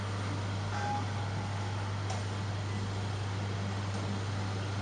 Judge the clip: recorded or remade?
recorded